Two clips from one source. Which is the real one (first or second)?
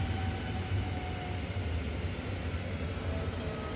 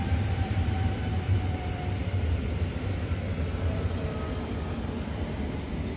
first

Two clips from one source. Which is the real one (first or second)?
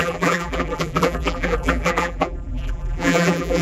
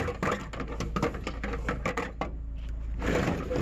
second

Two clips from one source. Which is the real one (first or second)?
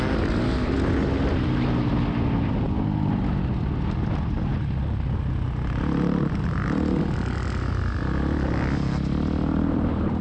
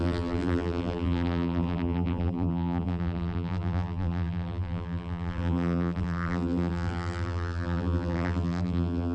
first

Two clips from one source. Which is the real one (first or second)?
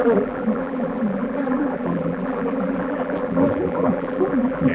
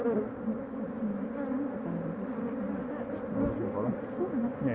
second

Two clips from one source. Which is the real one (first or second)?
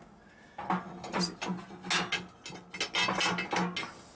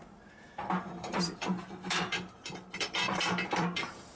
first